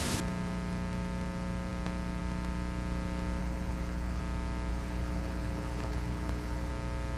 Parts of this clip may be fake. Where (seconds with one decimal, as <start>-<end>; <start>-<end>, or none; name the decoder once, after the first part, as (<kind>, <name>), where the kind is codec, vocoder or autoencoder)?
3.4-4.2 (codec, HILCodec); 4.7-6.7